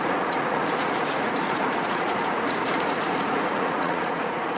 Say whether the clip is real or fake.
fake